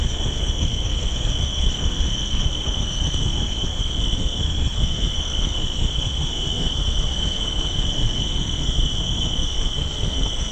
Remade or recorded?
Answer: remade